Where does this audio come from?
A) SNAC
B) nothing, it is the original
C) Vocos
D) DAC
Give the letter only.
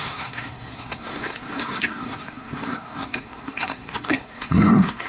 A